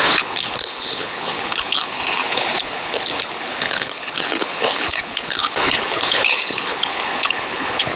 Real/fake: fake